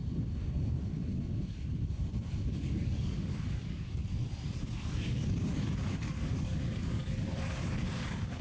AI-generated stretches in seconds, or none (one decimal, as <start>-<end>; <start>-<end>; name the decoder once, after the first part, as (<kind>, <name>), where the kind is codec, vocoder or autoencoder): 2.5-4.0 (codec, DAC); 4.7-8.4